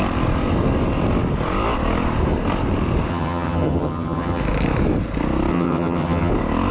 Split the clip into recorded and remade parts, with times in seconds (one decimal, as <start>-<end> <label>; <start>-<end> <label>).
0.0-3.1 recorded; 3.1-4.4 remade; 4.4-5.5 recorded; 5.5-6.3 remade; 6.3-6.7 recorded